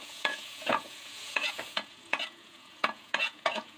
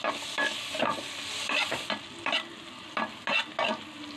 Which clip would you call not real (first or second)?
first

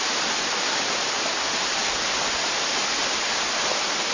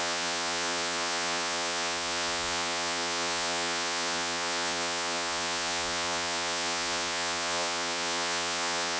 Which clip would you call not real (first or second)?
second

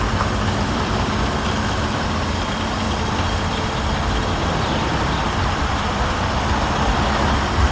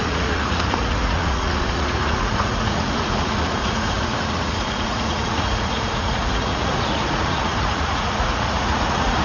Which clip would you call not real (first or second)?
second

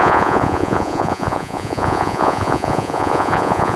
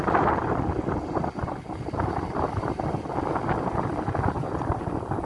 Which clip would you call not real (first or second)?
first